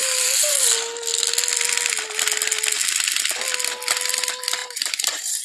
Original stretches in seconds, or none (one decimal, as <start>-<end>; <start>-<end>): 0.7-4.6